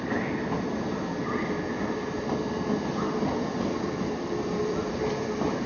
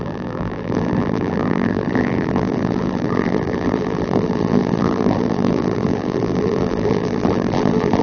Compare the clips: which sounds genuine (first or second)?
first